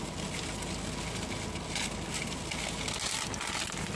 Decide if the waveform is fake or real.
real